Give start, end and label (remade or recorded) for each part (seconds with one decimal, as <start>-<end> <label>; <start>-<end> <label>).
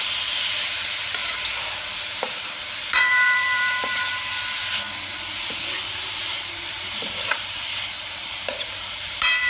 0.0-4.6 remade; 4.6-6.2 recorded; 6.2-9.5 remade